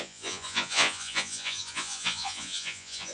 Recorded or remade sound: remade